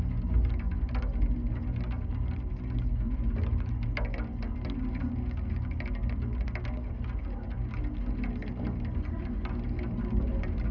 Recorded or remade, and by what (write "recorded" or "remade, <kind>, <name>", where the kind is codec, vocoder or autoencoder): recorded